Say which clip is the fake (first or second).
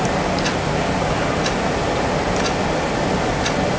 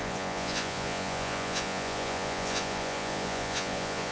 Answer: second